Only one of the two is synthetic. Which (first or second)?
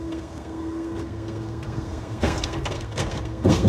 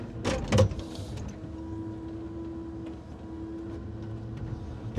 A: first